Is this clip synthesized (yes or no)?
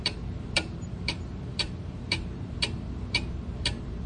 yes